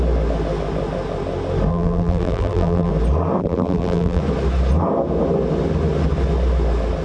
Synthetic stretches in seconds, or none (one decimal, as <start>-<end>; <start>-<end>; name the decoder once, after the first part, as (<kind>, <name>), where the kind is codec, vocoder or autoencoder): 1.7-2.9 (vocoder, BigVGAN v2); 3.4-4.2